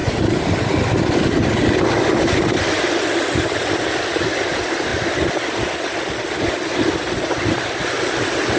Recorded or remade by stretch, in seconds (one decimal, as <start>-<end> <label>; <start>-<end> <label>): 0.0-8.6 recorded